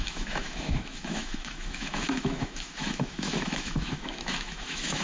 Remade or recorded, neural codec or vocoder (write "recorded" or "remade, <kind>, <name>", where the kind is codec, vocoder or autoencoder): remade, autoencoder, DAC-VAE